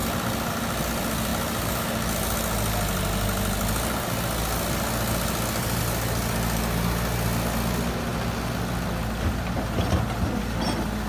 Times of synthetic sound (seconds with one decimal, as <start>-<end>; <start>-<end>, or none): none